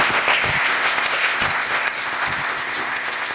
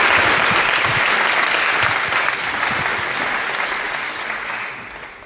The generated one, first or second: first